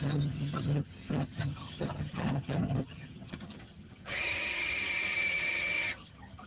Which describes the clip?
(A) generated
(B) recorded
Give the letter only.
A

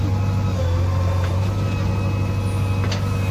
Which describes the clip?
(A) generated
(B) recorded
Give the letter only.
B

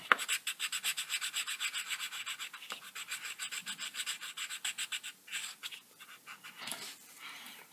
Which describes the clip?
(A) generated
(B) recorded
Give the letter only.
A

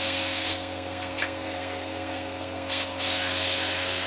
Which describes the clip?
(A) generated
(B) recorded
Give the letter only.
A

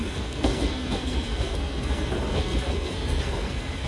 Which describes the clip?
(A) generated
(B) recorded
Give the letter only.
A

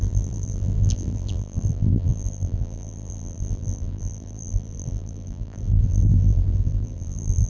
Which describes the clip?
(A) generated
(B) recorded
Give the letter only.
A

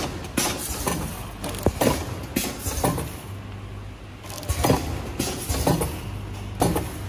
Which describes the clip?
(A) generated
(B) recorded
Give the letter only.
B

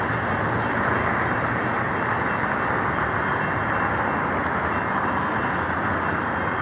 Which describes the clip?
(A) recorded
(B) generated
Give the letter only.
A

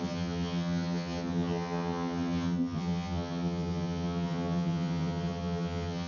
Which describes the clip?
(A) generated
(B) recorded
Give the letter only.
A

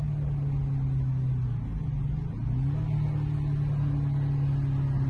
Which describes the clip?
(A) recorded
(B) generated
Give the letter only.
A